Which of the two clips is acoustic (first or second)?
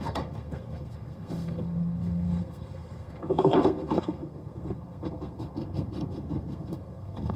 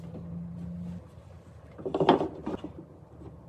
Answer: second